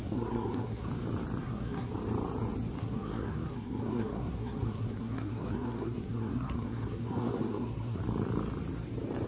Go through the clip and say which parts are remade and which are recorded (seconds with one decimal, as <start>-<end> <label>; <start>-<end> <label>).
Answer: 0.0-0.9 remade; 0.9-1.4 recorded; 1.4-1.9 remade; 1.9-2.8 recorded; 2.8-8.0 remade; 8.0-9.3 recorded